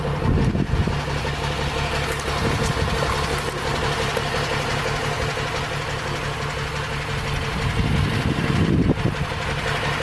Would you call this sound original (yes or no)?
yes